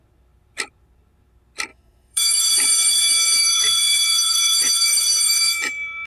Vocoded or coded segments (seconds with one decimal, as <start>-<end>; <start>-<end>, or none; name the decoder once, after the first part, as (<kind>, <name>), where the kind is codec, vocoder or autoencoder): 1.7-2.5 (autoencoder, DAC-VAE); 3.4-6.1